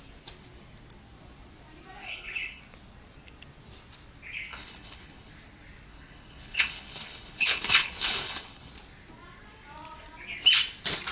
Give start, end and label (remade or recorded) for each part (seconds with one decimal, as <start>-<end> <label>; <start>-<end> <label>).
0.0-2.0 recorded; 2.0-2.6 remade; 2.6-4.5 recorded; 4.5-5.3 remade; 5.3-5.9 recorded; 5.9-8.7 remade; 8.7-11.1 recorded